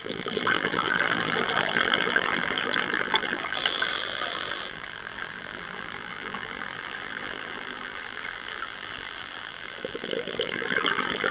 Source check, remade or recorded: remade